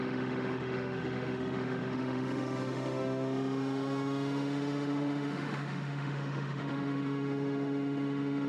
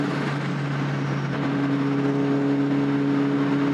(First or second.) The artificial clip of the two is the first